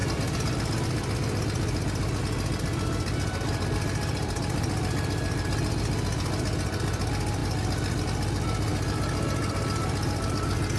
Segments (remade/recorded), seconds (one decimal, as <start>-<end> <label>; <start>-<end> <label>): 0.0-10.8 recorded